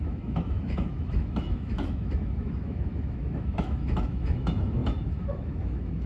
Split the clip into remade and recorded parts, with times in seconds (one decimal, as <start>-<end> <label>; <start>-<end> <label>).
0.0-6.1 remade